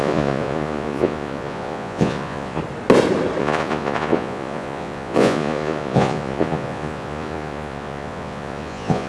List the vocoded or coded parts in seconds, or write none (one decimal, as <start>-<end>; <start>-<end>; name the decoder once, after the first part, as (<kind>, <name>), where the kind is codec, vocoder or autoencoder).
0.0-2.6 (vocoder, Vocos); 3.4-9.1